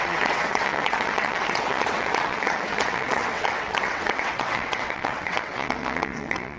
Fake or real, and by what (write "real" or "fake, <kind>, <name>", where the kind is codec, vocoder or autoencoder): fake, vocoder, WaveNeXt